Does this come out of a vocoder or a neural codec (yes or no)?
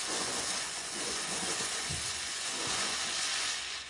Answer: yes